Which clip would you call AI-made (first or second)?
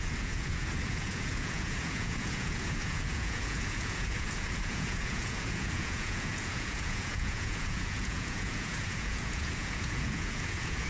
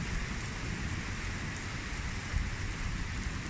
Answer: first